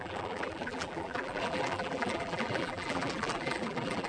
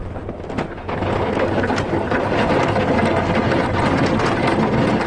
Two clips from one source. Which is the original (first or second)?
second